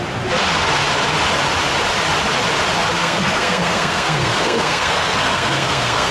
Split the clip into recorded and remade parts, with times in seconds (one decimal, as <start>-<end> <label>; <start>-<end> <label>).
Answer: 0.0-3.0 recorded; 3.0-6.1 remade